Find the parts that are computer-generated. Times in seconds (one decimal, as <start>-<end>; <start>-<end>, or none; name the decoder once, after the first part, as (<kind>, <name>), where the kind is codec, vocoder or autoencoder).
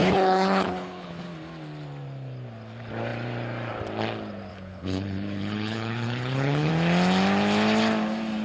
0.0-1.1 (codec, HILCodec); 4.5-6.7